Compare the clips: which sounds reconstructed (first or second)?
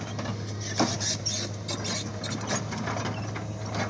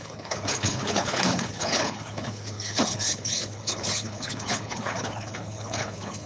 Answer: second